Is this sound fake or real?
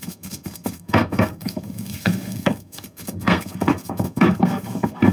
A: fake